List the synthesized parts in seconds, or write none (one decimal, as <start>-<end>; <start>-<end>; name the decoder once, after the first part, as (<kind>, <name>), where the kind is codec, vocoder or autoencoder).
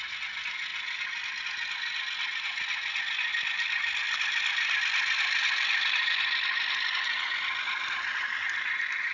3.3-7.9 (vocoder, BigVGAN v2)